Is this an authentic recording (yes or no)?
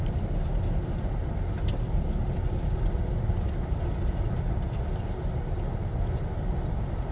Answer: yes